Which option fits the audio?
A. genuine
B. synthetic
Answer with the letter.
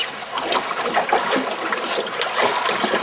A